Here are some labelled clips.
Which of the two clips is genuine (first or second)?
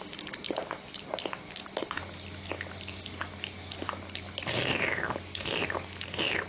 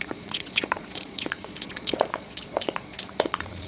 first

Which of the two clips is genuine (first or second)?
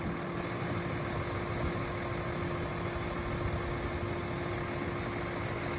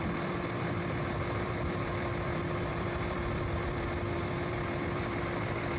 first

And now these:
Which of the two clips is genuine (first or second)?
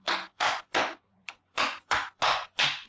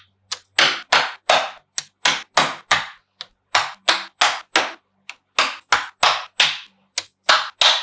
second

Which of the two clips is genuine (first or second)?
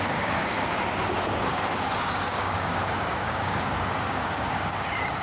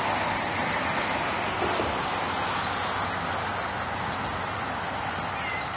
second